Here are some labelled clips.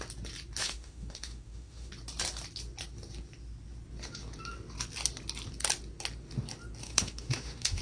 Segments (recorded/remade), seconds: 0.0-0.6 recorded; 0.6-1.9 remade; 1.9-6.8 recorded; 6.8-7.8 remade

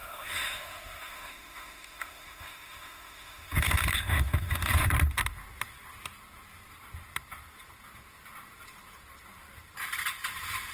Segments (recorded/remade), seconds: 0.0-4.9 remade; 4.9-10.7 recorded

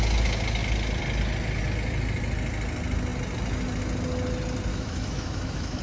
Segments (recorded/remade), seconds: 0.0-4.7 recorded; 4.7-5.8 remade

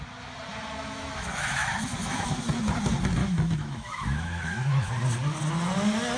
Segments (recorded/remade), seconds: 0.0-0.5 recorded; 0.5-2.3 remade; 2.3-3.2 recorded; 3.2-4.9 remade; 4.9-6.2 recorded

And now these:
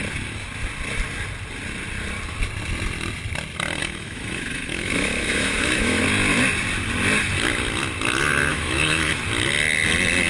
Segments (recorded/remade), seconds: 0.0-3.8 recorded; 3.8-6.0 remade; 6.0-8.5 recorded; 8.5-9.1 remade; 9.1-10.3 recorded

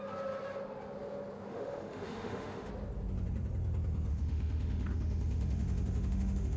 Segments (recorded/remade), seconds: 0.0-1.5 recorded; 1.5-2.7 remade; 2.7-4.1 recorded; 4.1-6.6 remade

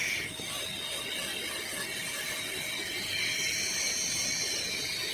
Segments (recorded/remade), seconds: 0.0-5.1 recorded

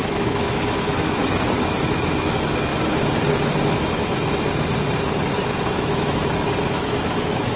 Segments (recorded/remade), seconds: 0.0-2.7 remade; 2.7-5.7 recorded; 5.7-7.6 remade